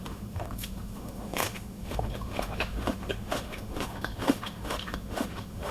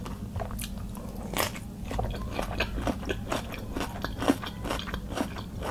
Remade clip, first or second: first